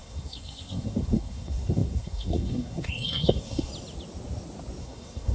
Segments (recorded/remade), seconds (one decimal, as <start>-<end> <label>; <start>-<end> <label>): 0.0-3.7 remade; 3.7-4.8 recorded; 4.8-5.3 remade